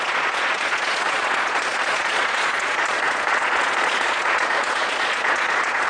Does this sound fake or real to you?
fake